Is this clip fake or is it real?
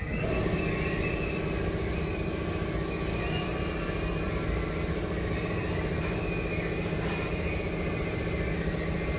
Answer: real